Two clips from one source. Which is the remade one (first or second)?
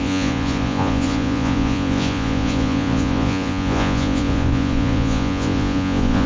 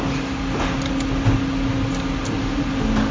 first